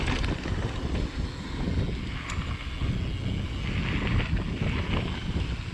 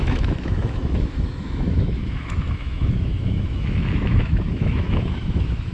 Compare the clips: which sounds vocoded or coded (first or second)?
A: second